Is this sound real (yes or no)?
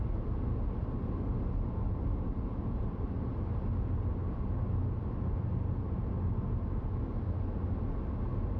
yes